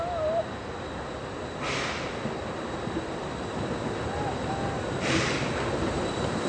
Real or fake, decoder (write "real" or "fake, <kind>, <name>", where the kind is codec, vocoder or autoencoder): real